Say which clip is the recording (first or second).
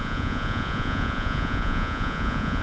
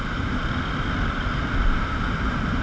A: second